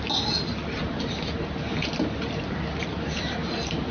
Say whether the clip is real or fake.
real